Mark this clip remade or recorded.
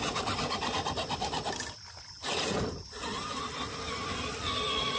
recorded